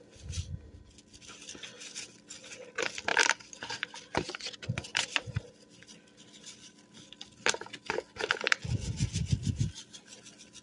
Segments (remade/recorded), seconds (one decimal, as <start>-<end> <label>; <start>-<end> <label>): 0.0-3.1 recorded; 3.1-6.2 remade; 6.2-10.6 recorded